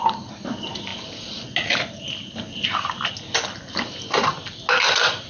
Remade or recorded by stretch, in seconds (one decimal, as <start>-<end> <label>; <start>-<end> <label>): 0.0-5.3 recorded